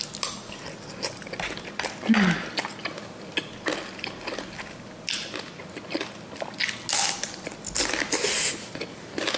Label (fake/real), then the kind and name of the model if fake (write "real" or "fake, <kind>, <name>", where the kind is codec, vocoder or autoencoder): real